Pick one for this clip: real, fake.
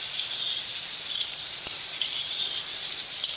fake